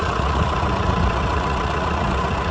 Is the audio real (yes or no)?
no